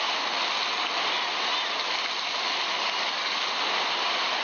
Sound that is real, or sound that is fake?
real